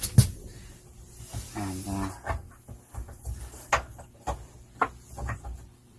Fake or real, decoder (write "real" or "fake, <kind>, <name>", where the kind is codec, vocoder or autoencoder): real